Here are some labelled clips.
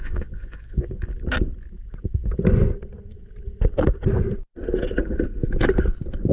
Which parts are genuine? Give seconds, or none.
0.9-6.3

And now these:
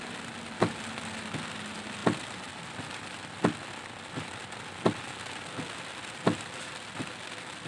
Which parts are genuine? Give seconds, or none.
0.0-7.7

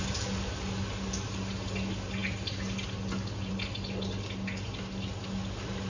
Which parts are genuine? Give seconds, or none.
0.0-5.9

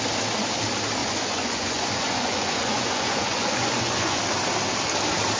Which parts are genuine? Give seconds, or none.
0.0-1.0; 4.2-5.4

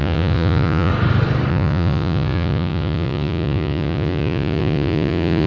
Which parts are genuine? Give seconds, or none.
0.9-1.5

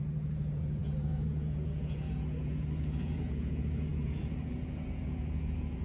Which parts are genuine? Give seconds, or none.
none

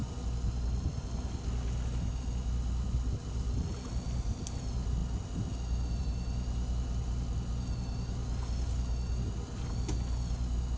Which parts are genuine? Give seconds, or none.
0.0-10.8